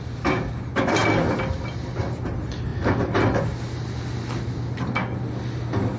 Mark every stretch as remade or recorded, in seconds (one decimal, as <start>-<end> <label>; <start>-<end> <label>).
0.0-6.0 recorded